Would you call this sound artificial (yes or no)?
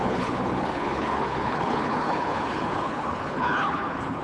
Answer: yes